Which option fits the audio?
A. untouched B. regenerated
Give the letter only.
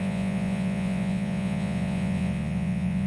B